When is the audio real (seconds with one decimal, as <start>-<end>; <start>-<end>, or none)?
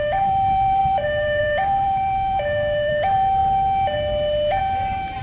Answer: 3.4-4.6